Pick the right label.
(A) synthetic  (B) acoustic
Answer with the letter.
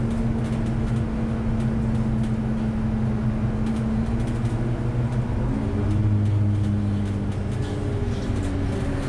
B